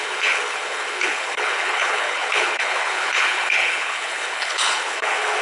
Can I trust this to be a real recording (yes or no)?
no